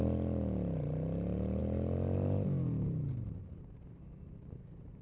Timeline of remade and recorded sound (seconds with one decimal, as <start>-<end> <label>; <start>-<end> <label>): 0.0-5.0 recorded